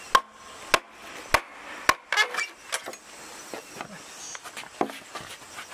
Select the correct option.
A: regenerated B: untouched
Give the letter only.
B